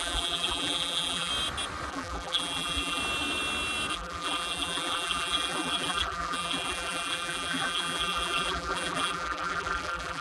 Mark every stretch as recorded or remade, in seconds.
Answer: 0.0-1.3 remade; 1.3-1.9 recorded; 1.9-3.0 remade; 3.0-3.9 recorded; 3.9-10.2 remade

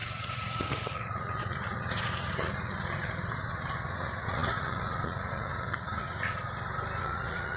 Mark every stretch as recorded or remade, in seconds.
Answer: 0.0-6.4 remade; 6.4-7.0 recorded; 7.0-7.6 remade